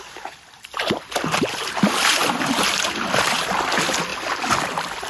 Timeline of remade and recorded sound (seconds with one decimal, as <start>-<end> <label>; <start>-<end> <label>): 0.0-5.1 recorded